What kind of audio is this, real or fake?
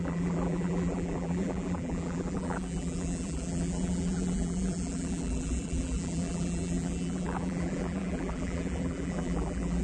fake